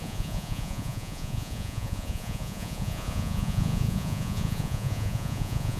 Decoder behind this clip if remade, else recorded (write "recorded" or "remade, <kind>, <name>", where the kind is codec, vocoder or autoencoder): remade, vocoder, Vocos